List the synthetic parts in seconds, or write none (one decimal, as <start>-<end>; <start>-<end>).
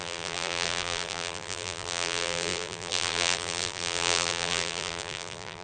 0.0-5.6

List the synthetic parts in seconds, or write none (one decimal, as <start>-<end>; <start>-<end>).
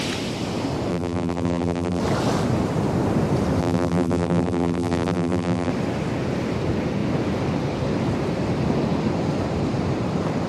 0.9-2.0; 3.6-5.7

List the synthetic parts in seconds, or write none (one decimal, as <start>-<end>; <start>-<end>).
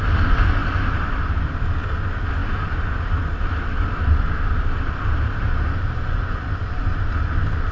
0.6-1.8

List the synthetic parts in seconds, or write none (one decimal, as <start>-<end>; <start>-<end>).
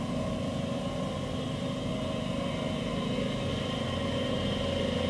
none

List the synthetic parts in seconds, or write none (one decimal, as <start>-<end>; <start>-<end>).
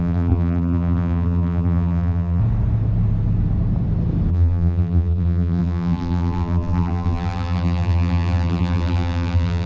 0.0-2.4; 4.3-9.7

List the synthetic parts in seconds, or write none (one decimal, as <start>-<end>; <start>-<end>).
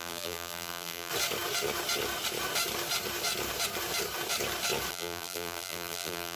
0.0-1.1; 4.9-6.4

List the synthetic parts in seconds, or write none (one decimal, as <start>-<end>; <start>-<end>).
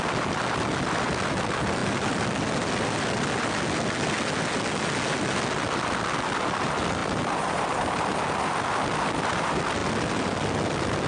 none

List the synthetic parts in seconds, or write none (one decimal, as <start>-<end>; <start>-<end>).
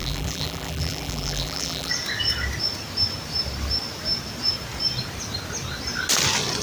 0.0-1.9